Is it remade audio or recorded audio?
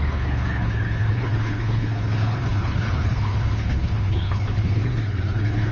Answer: remade